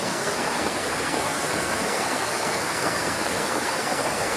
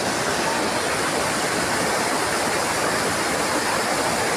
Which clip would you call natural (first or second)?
second